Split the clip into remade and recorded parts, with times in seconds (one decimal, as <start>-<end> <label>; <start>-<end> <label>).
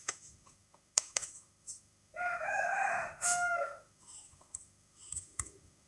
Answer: 0.0-5.9 remade